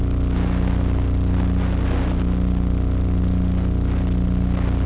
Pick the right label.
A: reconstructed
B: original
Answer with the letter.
B